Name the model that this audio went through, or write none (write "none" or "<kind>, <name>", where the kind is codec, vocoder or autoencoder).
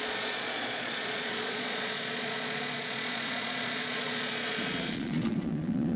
vocoder, Vocos